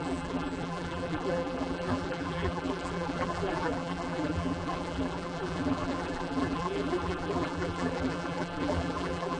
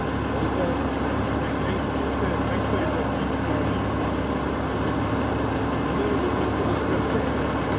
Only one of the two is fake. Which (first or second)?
first